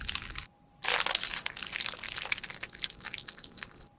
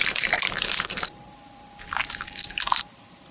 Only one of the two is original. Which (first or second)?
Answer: first